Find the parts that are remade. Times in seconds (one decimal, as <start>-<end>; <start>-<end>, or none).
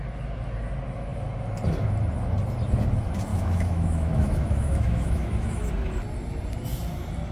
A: 3.3-5.7